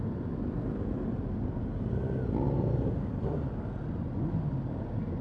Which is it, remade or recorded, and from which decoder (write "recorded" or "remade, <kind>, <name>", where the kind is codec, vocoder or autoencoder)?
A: recorded